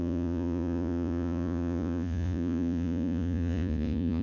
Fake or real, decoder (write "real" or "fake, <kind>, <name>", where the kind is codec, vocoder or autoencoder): fake, vocoder, Vocos